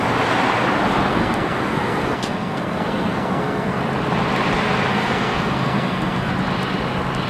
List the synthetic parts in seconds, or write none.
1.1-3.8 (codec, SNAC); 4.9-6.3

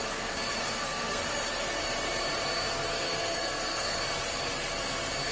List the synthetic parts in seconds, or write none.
0.6-1.2 (codec, SNAC); 2.9-4.0

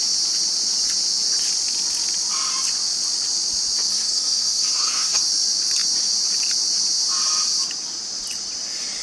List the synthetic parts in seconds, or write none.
3.9-5.2 (codec, SNAC)

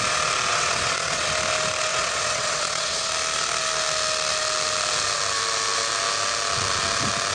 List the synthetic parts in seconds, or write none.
0.5-1.3 (vocoder, WaveNeXt); 1.9-3.1